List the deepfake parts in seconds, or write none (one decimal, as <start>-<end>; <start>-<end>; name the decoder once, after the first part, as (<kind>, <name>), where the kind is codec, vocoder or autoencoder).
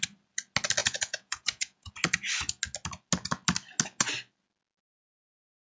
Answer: 0.8-1.9 (vocoder, Vocos)